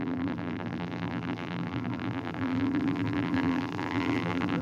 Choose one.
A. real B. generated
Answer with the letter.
B